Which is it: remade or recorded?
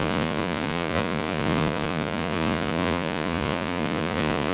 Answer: remade